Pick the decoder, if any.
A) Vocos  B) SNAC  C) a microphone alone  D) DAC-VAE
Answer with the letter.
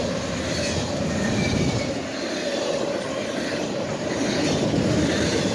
C